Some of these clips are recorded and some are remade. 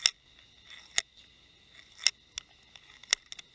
recorded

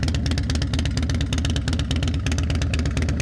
recorded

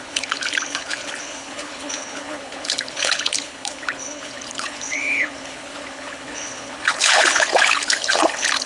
remade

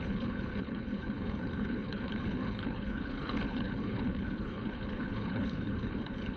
remade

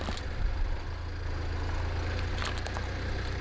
recorded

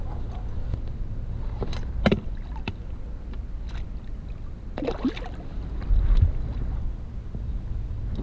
recorded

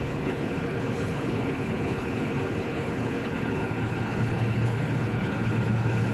remade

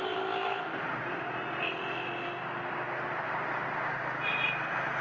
recorded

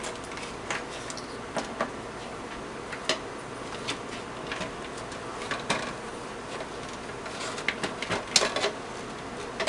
recorded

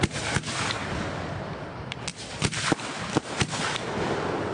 recorded